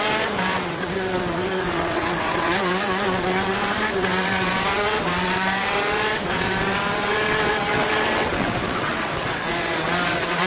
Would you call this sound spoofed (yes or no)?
yes